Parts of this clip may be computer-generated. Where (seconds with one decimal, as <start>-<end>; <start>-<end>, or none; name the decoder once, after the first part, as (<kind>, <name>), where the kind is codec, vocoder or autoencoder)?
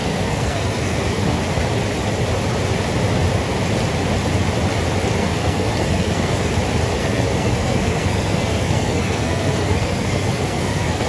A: 0.0-1.4 (codec, SNAC); 5.2-6.5; 7.0-11.1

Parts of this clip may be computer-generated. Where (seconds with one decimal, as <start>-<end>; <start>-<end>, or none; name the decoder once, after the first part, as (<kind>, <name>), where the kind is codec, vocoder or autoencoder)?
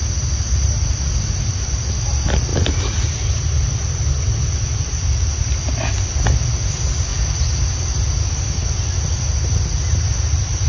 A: none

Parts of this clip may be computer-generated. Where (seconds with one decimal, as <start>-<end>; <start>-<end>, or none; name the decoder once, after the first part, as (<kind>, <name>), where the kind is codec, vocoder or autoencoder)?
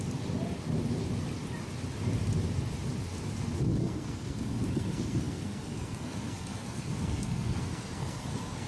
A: 3.7-8.7 (codec, SNAC)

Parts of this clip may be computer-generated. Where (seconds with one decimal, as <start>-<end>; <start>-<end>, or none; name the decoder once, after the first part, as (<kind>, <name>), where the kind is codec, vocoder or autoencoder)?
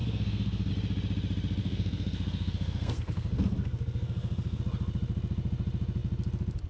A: 0.0-0.7 (codec, SNAC); 1.6-4.6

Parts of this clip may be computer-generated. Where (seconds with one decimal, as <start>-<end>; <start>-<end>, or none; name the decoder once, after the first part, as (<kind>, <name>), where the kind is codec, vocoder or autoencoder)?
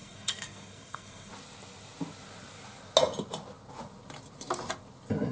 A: 0.0-1.3 (codec, SNAC)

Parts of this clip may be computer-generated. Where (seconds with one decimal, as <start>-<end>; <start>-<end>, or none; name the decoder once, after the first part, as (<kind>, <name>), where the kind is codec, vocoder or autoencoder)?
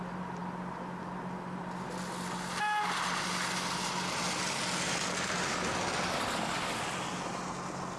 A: none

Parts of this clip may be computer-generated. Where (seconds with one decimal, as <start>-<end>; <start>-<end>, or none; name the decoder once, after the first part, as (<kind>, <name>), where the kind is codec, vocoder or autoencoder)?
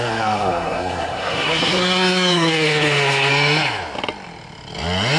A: 0.0-3.3 (codec, SNAC)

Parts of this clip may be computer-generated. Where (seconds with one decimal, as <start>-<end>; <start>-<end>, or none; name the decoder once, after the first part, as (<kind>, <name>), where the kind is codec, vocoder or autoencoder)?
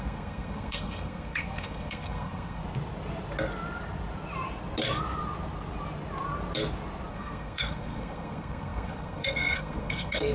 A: 0.0-2.6 (codec, SNAC); 7.1-10.3